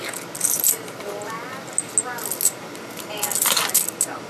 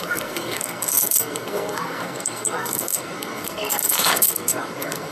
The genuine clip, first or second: first